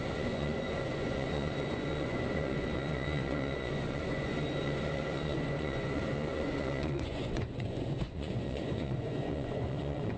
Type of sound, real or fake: fake